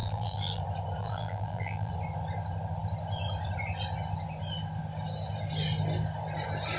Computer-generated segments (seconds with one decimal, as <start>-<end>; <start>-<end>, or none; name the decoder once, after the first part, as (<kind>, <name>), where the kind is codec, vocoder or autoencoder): 0.0-0.6 (vocoder, BigVGAN v2); 1.0-1.9